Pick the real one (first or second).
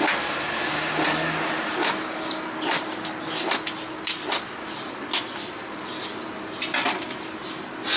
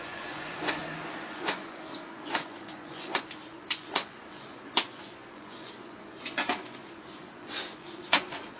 first